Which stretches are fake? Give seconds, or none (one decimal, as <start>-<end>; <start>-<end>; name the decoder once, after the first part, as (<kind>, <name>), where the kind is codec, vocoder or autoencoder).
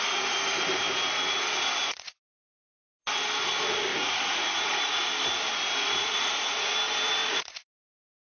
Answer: 1.8-2.6 (vocoder, Vocos); 3.9-5.0; 5.8-6.7; 7.2-8.4